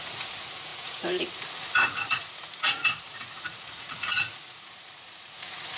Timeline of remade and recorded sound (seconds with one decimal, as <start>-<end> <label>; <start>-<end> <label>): 0.0-5.8 remade